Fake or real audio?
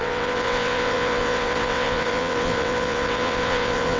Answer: fake